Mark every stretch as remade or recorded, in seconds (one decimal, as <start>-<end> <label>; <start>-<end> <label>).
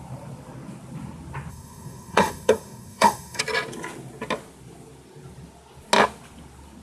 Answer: 0.0-1.5 recorded; 1.5-3.4 remade; 3.4-6.8 recorded